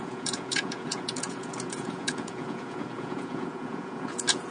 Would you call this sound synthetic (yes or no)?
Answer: yes